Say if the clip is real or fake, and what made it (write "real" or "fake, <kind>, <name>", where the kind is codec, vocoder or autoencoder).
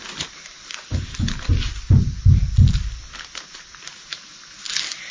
real